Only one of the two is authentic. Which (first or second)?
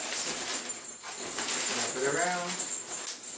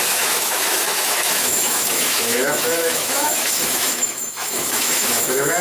first